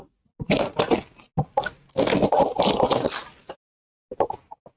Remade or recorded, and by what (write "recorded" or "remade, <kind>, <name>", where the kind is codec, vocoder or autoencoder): recorded